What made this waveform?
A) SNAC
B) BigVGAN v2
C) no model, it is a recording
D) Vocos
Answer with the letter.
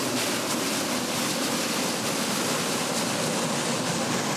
C